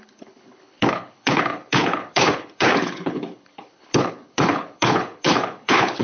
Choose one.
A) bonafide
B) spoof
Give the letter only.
B